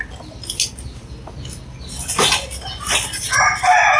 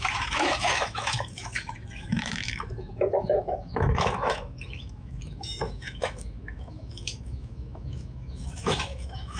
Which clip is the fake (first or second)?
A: second